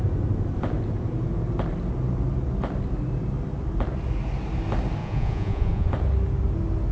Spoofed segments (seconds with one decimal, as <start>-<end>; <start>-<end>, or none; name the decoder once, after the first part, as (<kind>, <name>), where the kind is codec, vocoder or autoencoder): 5.0-5.9 (vocoder, Vocos)